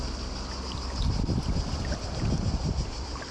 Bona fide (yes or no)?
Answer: yes